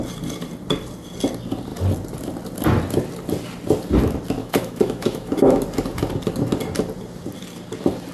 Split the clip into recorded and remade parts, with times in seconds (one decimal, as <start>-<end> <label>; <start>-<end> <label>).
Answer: 0.0-4.4 recorded; 4.4-5.6 remade; 5.6-8.1 recorded